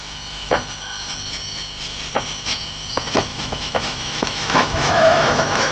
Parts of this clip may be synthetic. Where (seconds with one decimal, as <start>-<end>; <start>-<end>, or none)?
3.3-5.7